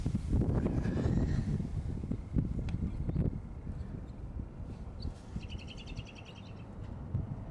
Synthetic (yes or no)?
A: no